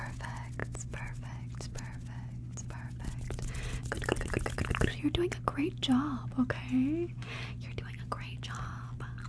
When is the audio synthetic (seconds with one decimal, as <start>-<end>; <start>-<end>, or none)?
none